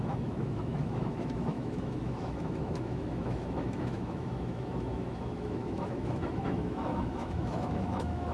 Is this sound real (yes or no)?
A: no